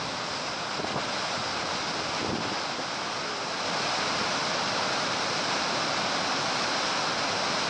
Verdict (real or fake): real